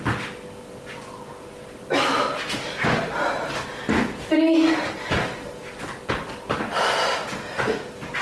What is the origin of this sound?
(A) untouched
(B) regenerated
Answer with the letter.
A